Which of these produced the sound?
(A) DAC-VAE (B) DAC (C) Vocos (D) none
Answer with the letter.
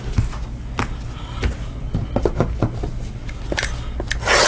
D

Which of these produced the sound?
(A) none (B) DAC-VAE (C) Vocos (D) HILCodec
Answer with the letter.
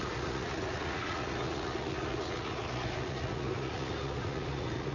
C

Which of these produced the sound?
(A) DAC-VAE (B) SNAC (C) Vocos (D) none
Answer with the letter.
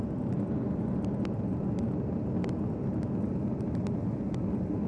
D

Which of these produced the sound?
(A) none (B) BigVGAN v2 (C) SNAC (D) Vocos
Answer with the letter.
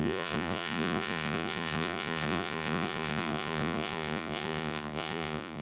D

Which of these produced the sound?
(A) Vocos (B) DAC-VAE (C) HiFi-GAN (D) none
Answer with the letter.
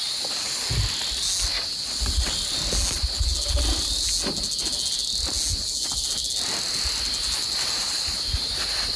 D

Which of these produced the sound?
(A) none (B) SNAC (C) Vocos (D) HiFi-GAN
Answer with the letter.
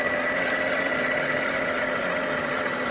A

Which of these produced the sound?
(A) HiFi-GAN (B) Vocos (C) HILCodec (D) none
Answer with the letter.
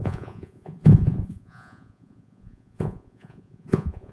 B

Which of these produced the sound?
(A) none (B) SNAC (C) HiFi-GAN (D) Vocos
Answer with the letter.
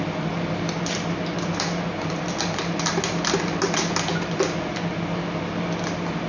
A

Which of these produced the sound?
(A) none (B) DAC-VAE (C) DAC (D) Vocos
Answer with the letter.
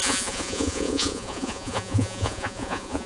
D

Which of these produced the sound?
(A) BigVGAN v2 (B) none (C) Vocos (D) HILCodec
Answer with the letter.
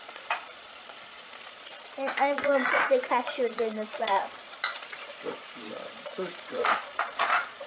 C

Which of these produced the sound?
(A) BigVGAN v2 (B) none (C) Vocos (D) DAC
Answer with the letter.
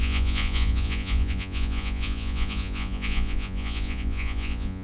C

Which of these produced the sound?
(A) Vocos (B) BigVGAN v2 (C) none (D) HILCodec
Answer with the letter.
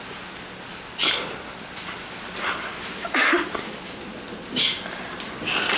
C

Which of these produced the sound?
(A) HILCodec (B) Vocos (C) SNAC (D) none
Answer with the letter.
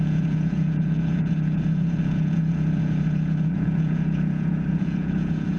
B